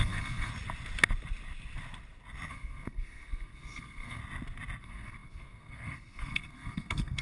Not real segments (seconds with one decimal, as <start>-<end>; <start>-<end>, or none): 0.0-0.5; 2.5-4.2; 4.8-7.2